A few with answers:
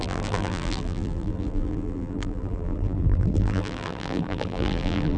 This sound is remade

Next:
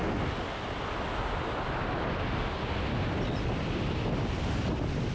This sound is recorded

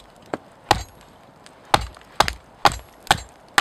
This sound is recorded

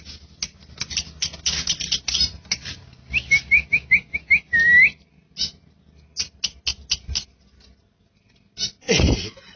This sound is recorded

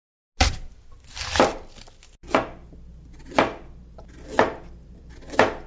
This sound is recorded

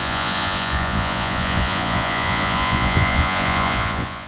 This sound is remade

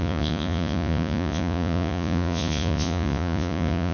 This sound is remade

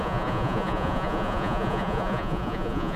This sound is remade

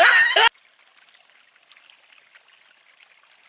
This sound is recorded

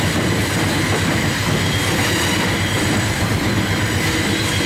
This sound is recorded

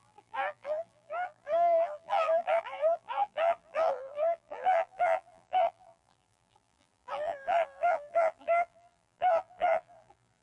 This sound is remade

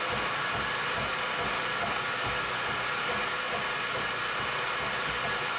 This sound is recorded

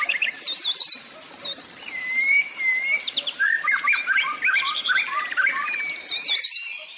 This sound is remade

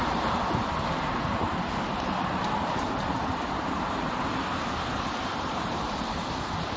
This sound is remade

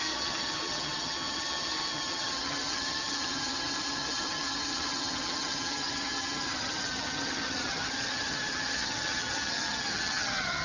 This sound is remade